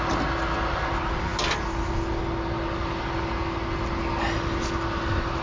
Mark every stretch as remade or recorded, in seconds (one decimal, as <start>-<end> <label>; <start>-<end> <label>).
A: 0.0-5.4 recorded